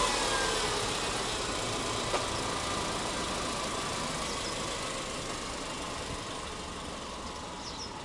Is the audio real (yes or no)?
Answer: yes